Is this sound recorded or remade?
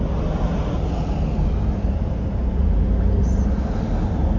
recorded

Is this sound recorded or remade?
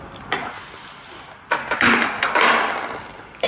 recorded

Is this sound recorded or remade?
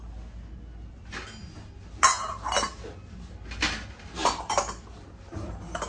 recorded